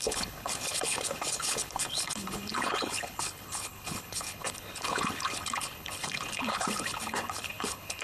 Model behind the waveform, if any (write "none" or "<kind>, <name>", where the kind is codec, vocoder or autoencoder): codec, HILCodec